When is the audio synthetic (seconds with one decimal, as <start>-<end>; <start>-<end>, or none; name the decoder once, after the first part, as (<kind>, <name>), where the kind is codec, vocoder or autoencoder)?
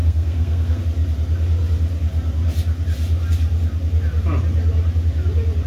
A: 0.0-0.8 (codec, SNAC)